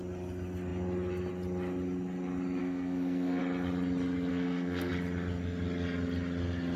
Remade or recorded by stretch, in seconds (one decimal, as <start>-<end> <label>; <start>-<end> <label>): 0.0-2.6 recorded; 2.6-3.4 remade; 3.4-4.3 recorded; 4.3-4.9 remade; 4.9-6.8 recorded